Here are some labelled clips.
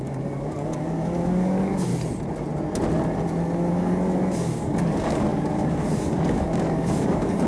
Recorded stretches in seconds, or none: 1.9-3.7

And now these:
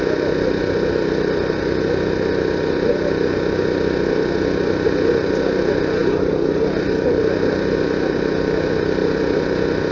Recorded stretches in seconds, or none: 0.0-9.9

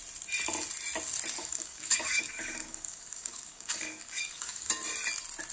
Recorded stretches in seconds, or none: 0.0-1.4; 4.7-5.5

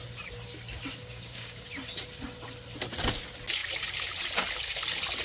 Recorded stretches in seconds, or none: 0.0-1.0; 1.7-5.2